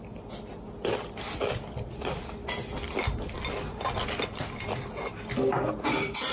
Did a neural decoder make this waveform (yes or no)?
no